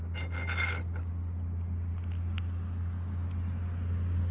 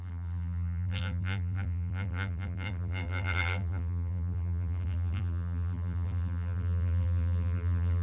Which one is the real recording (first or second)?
first